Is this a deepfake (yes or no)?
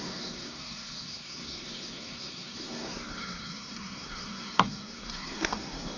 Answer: yes